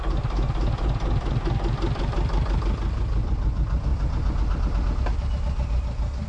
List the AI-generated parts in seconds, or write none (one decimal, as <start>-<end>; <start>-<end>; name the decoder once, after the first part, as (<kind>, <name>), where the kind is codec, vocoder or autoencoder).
none